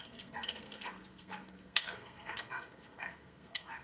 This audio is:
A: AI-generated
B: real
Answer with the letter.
A